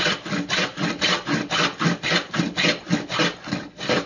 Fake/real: real